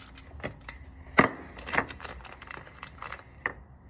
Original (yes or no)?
yes